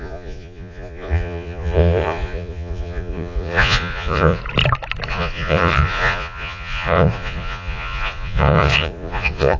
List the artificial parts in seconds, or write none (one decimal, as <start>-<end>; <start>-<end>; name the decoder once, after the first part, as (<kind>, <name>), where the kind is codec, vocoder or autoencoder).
0.0-4.4 (vocoder, Vocos); 5.1-9.6